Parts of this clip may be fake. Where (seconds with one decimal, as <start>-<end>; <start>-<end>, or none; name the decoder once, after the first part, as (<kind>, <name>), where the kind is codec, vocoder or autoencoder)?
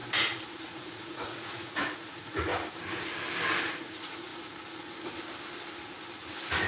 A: 0.6-2.5 (vocoder, Vocos); 3.6-4.3